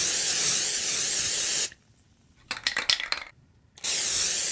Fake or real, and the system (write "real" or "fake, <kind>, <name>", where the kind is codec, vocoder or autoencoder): real